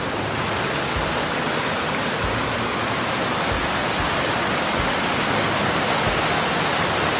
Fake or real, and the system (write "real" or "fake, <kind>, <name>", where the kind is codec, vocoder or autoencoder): real